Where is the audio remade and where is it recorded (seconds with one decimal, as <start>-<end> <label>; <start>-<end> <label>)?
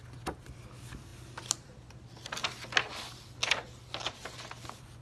0.0-5.0 recorded